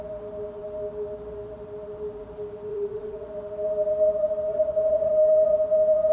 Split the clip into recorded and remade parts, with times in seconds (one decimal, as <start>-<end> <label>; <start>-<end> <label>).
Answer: 0.0-2.7 recorded; 2.7-3.3 remade; 3.3-4.5 recorded; 4.5-5.1 remade; 5.1-6.1 recorded